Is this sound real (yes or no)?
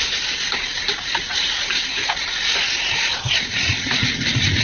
yes